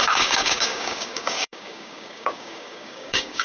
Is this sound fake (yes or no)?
yes